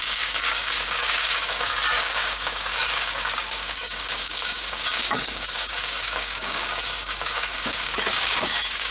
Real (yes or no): no